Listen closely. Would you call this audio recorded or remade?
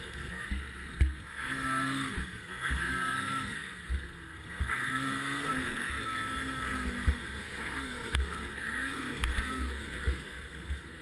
remade